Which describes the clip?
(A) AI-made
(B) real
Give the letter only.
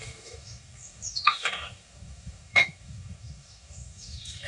A